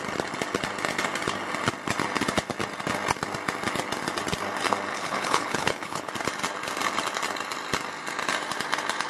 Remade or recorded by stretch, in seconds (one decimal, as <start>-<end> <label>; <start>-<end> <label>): 0.0-4.9 recorded; 4.9-6.1 remade; 6.1-9.1 recorded